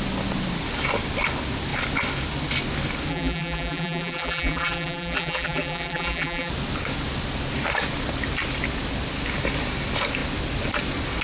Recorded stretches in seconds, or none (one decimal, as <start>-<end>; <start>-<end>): 0.0-3.1; 6.5-11.2